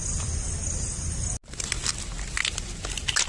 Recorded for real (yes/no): yes